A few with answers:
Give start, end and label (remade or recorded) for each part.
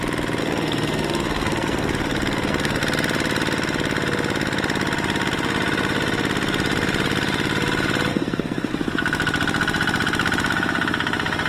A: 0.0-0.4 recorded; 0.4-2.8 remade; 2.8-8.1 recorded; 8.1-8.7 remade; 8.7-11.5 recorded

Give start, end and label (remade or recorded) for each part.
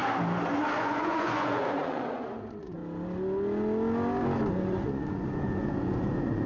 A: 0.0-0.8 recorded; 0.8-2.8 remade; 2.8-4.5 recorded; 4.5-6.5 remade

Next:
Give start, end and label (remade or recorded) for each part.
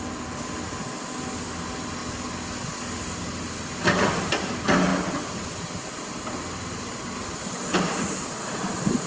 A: 0.0-9.1 recorded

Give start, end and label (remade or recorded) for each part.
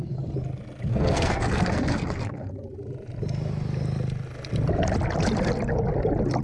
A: 0.0-0.9 recorded; 0.9-2.5 remade; 2.5-6.4 recorded